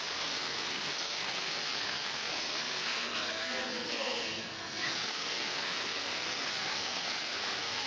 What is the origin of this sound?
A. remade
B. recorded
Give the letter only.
A